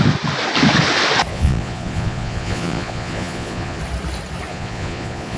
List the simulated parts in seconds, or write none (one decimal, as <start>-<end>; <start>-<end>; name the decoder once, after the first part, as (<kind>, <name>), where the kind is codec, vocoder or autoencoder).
1.3-3.8 (vocoder, Vocos); 4.5-5.4